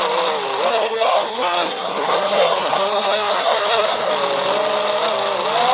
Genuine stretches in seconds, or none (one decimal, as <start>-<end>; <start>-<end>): 0.0-0.7; 4.1-5.7

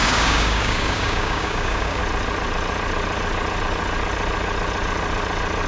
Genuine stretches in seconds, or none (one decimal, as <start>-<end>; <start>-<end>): 2.0-5.7

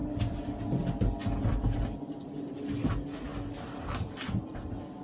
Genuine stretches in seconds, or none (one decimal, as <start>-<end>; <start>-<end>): 0.0-5.0

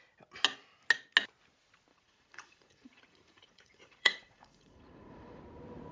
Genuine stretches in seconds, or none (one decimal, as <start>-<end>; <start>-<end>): 0.0-1.9; 5.4-5.9

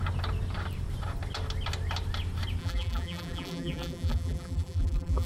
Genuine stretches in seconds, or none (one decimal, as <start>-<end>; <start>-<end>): 0.0-2.6

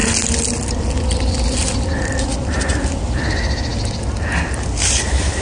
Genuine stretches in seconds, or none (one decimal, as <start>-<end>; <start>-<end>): 0.0-5.4

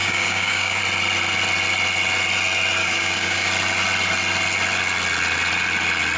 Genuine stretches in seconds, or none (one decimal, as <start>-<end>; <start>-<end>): 0.8-2.8; 3.5-6.2

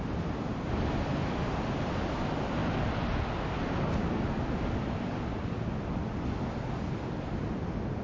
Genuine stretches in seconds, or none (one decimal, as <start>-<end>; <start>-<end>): 0.0-8.0